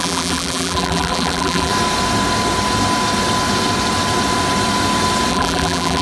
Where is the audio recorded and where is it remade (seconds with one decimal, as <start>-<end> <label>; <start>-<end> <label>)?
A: 0.0-1.7 remade; 1.7-5.3 recorded; 5.3-6.0 remade